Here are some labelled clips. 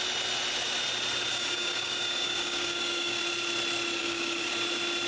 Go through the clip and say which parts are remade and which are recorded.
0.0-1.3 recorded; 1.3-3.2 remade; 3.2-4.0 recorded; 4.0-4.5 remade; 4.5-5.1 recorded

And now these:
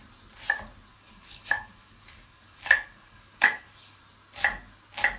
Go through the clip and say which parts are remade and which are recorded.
0.0-0.9 recorded; 0.9-4.0 remade; 4.0-5.2 recorded